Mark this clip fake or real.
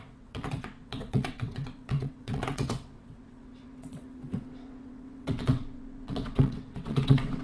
fake